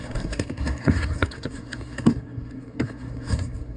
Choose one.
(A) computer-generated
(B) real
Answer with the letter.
A